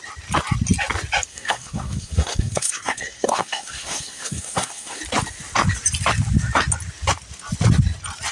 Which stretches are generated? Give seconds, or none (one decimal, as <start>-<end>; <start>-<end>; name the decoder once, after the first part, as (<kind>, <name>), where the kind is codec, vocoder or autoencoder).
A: 1.3-5.0 (codec, SNAC)